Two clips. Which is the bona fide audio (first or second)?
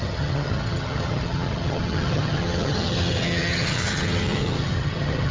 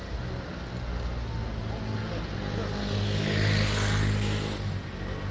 second